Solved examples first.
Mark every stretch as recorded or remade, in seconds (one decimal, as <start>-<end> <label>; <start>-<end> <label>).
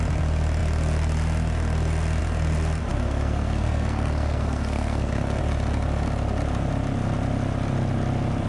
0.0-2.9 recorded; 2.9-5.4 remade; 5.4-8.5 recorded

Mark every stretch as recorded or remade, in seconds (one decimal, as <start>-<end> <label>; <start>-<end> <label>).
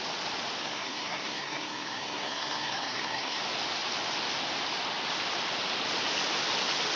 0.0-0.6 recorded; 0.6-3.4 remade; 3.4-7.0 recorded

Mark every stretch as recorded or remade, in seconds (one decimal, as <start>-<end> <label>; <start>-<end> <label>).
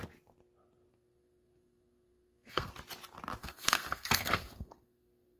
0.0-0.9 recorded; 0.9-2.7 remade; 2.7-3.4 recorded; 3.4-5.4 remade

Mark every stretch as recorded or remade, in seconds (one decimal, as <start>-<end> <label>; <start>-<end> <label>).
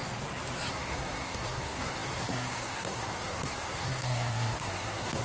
0.0-0.7 recorded; 0.7-5.2 remade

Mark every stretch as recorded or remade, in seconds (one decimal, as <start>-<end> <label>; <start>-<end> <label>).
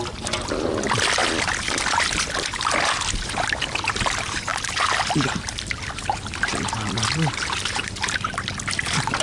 0.0-9.2 recorded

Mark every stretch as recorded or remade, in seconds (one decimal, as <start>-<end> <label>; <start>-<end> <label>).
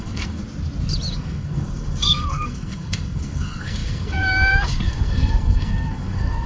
0.0-0.4 remade; 0.4-1.1 recorded; 1.1-6.5 remade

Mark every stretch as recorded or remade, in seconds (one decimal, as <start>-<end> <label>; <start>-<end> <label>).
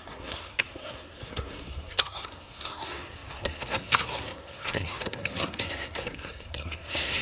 0.0-7.2 remade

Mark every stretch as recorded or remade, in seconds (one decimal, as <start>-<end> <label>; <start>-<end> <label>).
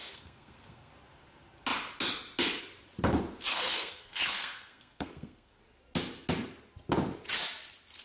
0.0-0.9 remade; 0.9-3.5 recorded; 3.5-5.6 remade; 5.6-8.0 recorded